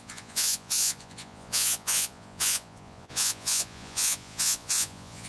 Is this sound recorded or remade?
remade